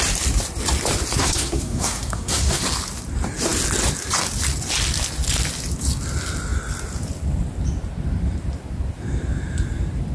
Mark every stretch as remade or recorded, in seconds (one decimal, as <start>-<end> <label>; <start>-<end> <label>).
0.0-1.2 recorded; 1.2-2.6 remade; 2.6-10.1 recorded